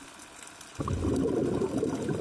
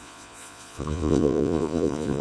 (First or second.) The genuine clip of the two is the first